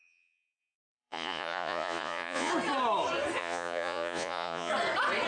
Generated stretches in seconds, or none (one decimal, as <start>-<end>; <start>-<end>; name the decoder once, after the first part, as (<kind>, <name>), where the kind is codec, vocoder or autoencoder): 0.0-2.5 (vocoder, Vocos); 3.4-4.7